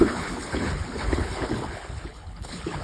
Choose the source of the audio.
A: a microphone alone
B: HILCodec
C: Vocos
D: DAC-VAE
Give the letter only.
B